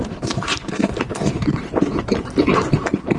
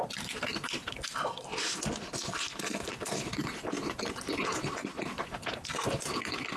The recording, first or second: second